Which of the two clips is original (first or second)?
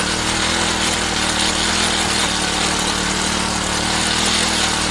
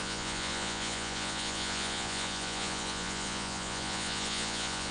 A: first